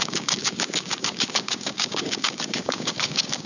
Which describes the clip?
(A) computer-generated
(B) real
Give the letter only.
A